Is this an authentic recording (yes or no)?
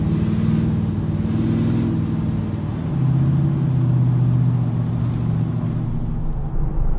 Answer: yes